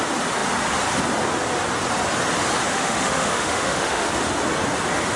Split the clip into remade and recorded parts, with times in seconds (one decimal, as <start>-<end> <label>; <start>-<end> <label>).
0.0-2.7 recorded; 2.7-4.1 remade; 4.1-5.2 recorded

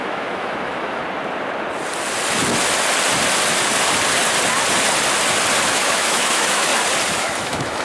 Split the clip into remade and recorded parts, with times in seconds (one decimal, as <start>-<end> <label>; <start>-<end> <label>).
0.0-1.0 remade; 1.0-5.7 recorded; 5.7-6.7 remade; 6.7-7.2 recorded; 7.2-7.8 remade

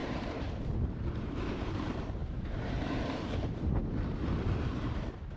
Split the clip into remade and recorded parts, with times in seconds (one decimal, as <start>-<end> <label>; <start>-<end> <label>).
0.0-5.4 remade